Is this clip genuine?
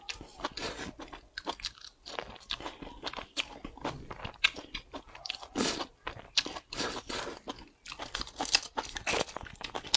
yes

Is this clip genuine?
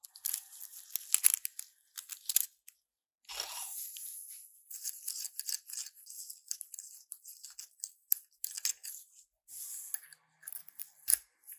yes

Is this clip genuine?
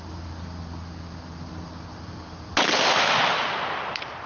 yes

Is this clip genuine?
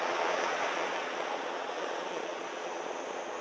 no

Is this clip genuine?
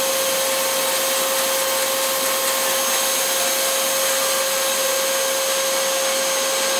yes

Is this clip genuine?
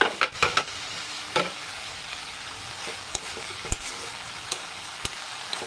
no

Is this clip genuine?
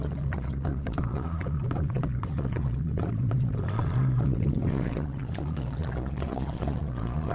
no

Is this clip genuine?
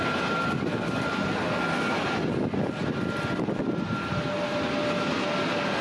yes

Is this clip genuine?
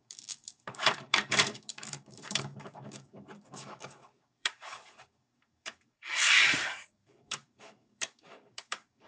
no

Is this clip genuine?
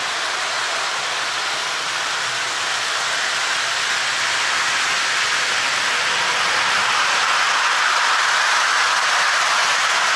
yes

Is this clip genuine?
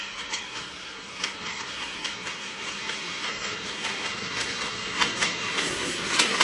no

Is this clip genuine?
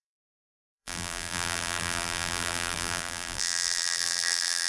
no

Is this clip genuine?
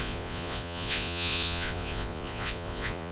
no